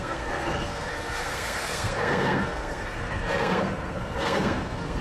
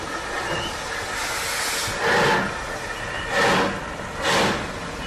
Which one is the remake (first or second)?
first